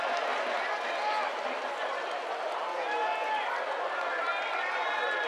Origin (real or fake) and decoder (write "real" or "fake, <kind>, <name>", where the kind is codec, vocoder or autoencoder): real